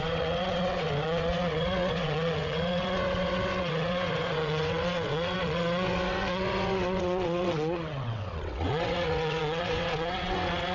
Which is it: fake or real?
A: fake